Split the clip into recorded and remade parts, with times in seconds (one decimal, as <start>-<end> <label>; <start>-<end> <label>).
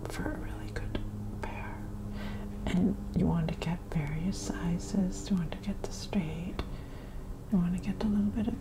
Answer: 0.0-8.6 recorded